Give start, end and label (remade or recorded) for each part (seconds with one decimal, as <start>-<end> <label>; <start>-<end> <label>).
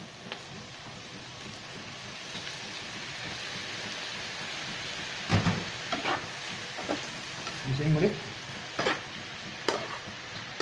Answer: 0.0-5.3 recorded; 5.3-6.3 remade; 6.3-10.6 recorded